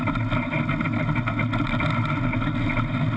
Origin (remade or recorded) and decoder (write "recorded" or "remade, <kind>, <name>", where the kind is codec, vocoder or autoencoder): recorded